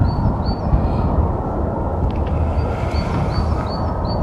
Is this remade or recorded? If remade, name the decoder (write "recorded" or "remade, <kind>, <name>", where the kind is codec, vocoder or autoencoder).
recorded